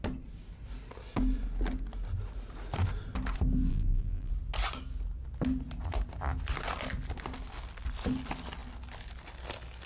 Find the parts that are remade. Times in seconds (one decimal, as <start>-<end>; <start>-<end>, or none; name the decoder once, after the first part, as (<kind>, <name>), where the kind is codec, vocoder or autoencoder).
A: 3.7-4.3 (vocoder, BigVGAN v2)